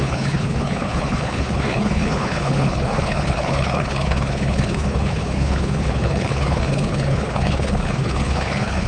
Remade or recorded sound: remade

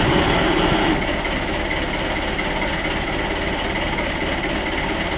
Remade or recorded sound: recorded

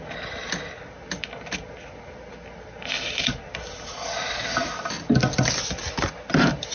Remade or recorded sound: recorded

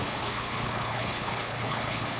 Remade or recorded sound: remade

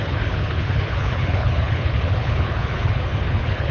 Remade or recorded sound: remade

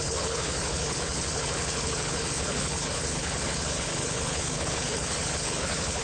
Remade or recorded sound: remade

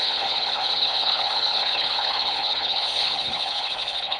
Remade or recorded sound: remade